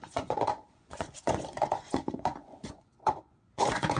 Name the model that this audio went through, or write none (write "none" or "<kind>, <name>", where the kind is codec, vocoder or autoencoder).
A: vocoder, Vocos